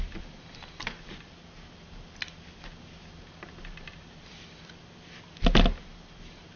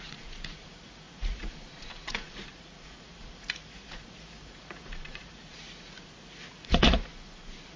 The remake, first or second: second